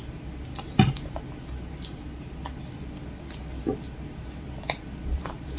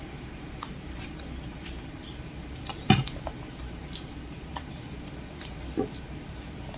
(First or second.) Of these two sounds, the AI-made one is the second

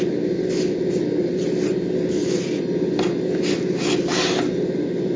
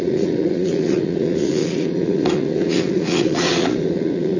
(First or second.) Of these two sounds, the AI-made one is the second